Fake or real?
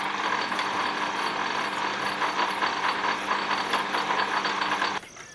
real